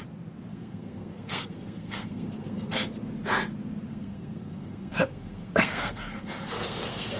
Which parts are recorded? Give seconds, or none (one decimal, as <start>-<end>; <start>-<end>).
0.0-0.5; 2.9-3.9